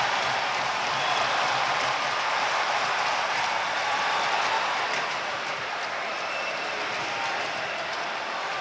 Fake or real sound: fake